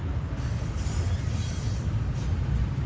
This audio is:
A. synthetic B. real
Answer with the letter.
B